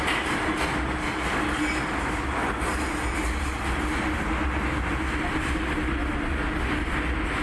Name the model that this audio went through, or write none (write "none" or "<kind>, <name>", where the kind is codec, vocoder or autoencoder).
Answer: none